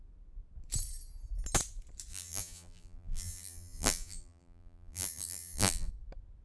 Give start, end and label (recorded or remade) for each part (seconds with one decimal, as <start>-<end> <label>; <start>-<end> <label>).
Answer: 0.0-2.1 recorded; 2.1-5.9 remade; 5.9-6.4 recorded